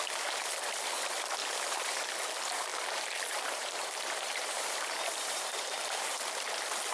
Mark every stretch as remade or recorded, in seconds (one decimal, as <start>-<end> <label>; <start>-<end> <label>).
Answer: 0.0-1.4 recorded; 1.4-2.0 remade; 2.0-2.7 recorded; 2.7-6.2 remade; 6.2-6.9 recorded

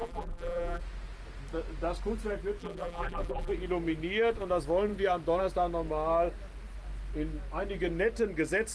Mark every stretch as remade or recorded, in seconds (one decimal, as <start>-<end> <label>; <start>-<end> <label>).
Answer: 0.0-0.8 remade; 0.8-2.6 recorded; 2.6-3.5 remade; 3.5-8.7 recorded

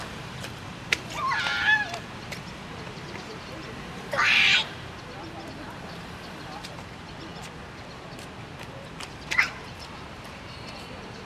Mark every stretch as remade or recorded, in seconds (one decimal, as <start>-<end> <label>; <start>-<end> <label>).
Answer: 0.0-7.3 remade; 7.3-8.1 recorded; 8.1-11.3 remade

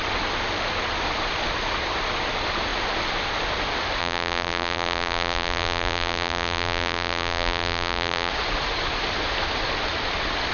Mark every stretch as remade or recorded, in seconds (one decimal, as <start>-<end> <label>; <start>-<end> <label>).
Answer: 0.0-4.0 recorded; 4.0-8.3 remade; 8.3-10.5 recorded

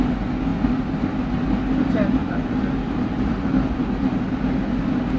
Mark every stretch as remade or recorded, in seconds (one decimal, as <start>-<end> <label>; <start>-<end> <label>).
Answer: 0.0-2.2 recorded; 2.2-4.3 remade; 4.3-5.2 recorded